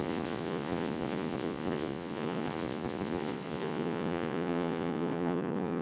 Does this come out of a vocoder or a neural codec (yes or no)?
yes